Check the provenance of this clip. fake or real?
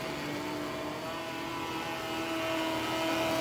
real